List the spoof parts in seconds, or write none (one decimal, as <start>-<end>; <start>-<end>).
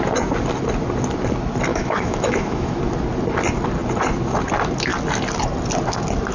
1.7-2.8